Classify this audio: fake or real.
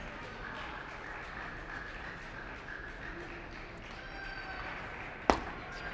real